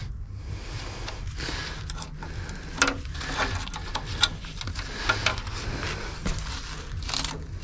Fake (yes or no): no